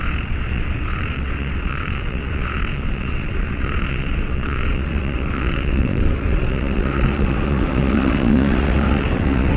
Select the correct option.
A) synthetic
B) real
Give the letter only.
A